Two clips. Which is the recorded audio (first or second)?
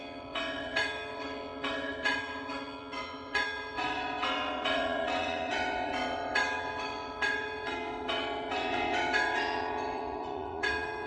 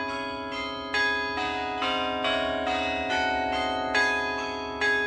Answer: second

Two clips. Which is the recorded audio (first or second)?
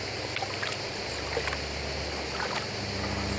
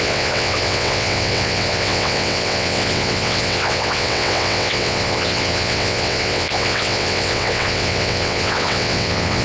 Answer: first